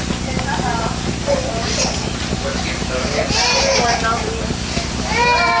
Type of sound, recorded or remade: recorded